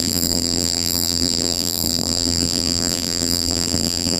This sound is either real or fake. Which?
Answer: fake